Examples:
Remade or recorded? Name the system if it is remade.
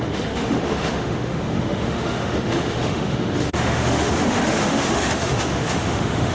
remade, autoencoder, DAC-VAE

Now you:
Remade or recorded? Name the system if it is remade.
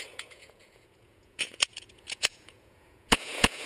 remade, vocoder, Vocos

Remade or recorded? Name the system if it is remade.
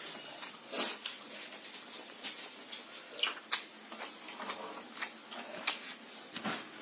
recorded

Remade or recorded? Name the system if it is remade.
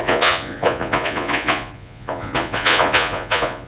remade, vocoder, Vocos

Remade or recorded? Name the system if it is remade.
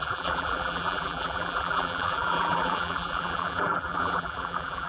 remade, vocoder, BigVGAN v2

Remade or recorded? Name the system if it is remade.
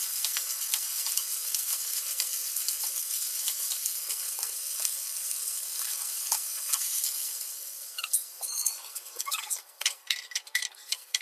remade, codec, SNAC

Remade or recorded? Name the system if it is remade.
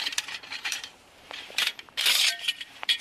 remade, vocoder, BigVGAN v2